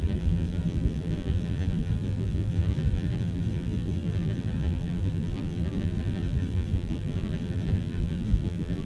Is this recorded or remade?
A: remade